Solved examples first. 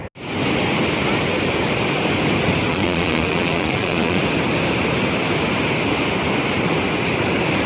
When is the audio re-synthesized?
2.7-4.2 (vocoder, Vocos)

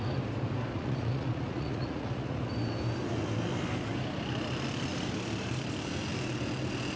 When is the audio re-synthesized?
0.7-2.5 (vocoder, Vocos)

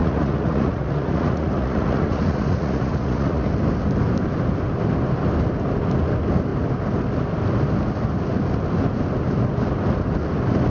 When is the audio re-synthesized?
0.0-3.5 (vocoder, Vocos)

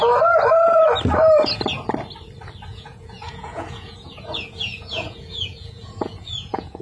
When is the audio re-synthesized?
2.7-6.8 (vocoder, Vocos)

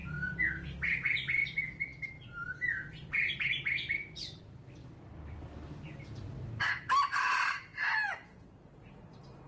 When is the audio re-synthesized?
0.0-0.5 (vocoder, Vocos)